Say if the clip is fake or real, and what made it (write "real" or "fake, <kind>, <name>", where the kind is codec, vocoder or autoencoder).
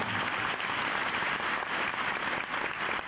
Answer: real